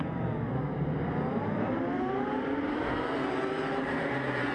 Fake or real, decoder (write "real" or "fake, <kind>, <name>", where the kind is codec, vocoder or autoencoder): fake, vocoder, BigVGAN v2